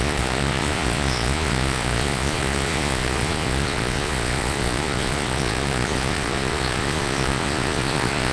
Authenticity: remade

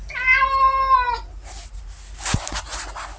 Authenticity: recorded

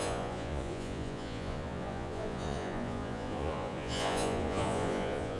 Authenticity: remade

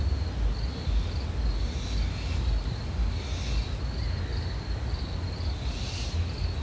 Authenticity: recorded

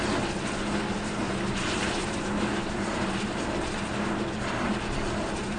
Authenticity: recorded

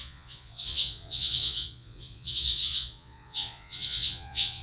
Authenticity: remade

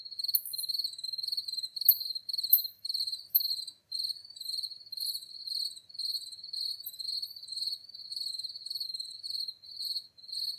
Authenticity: recorded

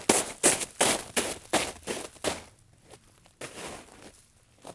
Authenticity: recorded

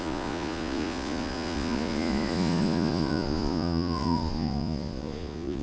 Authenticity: remade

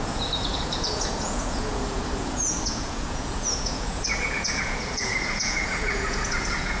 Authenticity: remade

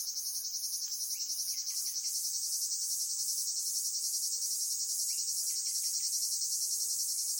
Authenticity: recorded